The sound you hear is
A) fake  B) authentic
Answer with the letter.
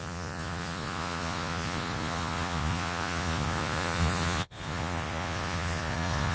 A